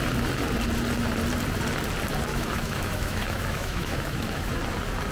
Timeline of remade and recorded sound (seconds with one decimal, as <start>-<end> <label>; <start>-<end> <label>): 0.0-2.3 recorded; 2.3-4.5 remade; 4.5-5.1 recorded